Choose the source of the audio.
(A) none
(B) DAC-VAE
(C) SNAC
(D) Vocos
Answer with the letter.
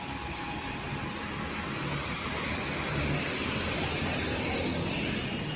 A